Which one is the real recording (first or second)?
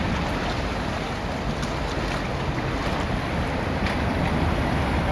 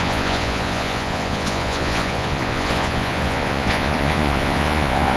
first